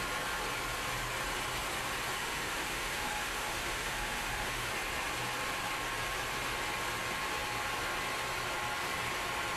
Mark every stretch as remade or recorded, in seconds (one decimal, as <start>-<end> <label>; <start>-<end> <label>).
0.0-2.2 recorded; 2.2-4.7 remade; 4.7-9.6 recorded